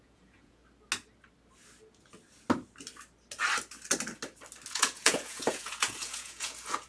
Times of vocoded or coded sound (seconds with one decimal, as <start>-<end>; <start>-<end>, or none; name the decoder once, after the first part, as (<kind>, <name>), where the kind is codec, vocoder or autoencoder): 0.0-0.6 (vocoder, Vocos); 4.7-6.9